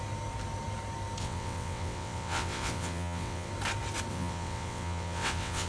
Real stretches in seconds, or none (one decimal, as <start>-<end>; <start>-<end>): 0.0-1.2; 3.5-4.1